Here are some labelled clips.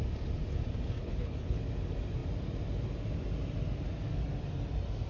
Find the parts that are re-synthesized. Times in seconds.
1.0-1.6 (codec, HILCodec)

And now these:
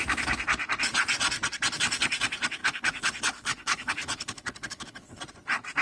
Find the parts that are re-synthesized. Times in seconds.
2.6-5.2 (codec, HILCodec)

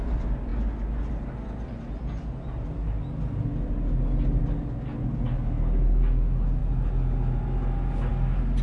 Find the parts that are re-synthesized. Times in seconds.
none